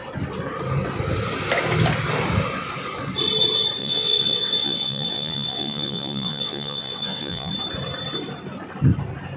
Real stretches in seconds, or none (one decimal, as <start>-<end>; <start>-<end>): 0.0-3.8; 7.5-9.4

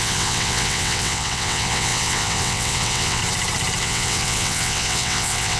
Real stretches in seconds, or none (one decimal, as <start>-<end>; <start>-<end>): 3.2-3.8